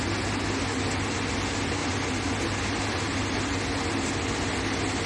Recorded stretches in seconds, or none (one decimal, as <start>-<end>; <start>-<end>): 0.0-5.1